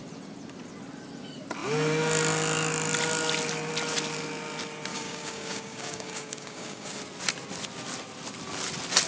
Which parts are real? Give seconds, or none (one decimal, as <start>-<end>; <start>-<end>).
0.0-4.9; 7.0-9.1